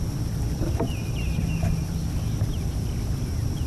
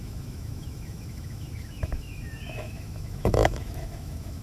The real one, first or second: first